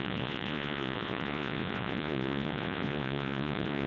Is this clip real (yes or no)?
no